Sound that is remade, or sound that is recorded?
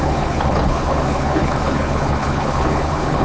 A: remade